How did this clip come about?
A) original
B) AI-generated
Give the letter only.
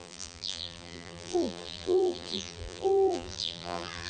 B